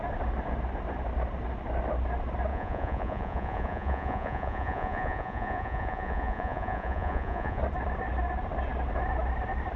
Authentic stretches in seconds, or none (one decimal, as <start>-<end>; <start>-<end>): 0.0-2.5; 7.6-9.8